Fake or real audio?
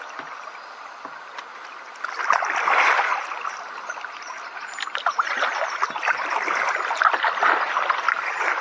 real